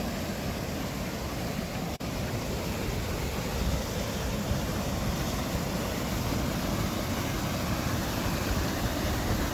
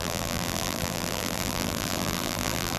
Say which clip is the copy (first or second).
second